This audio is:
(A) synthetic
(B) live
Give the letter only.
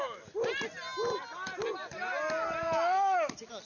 B